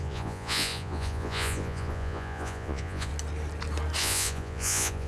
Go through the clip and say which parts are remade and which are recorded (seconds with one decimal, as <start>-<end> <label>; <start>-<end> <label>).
0.0-3.1 remade; 3.1-4.0 recorded; 4.0-5.1 remade